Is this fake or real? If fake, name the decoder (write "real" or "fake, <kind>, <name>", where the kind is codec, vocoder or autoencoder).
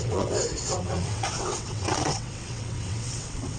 fake, vocoder, WaveNeXt